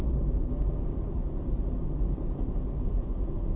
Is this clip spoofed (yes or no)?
no